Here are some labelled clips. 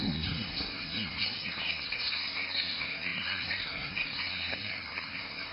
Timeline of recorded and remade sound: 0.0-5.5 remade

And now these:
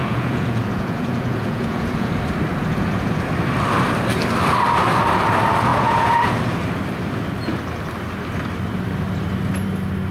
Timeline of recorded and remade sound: 0.0-2.1 remade; 2.1-2.5 recorded; 2.5-3.3 remade; 3.3-5.7 recorded; 5.7-6.4 remade; 6.4-10.1 recorded